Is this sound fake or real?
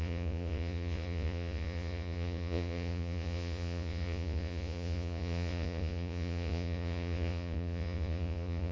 fake